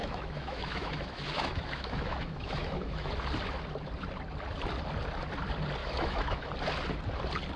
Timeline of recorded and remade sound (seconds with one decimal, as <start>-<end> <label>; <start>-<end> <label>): 0.0-3.1 remade; 3.1-5.8 recorded; 5.8-6.5 remade; 6.5-7.6 recorded